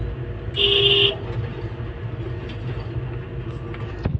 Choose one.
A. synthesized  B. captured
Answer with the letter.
B